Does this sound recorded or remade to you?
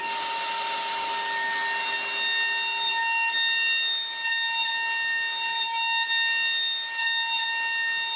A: recorded